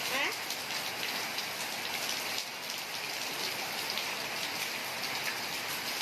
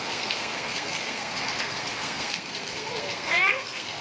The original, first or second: first